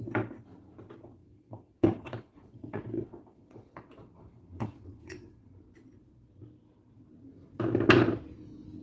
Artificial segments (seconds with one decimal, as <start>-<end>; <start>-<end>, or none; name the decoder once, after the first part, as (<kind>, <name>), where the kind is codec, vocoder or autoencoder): 1.2-5.5 (vocoder, WaveNeXt)